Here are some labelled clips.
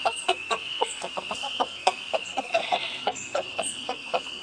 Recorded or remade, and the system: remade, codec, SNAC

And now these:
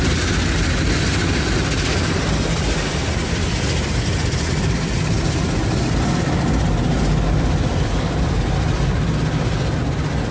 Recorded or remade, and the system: recorded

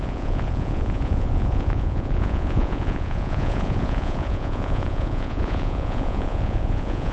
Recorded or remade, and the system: remade, vocoder, Vocos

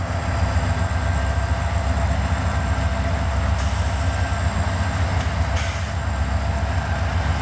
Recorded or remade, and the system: recorded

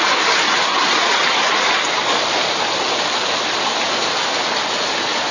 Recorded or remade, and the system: recorded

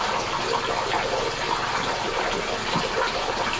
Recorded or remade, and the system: recorded